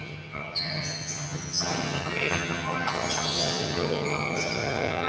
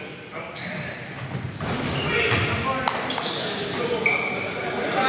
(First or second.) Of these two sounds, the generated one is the first